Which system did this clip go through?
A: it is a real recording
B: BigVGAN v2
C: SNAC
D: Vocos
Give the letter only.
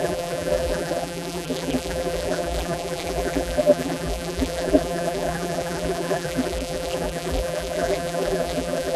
B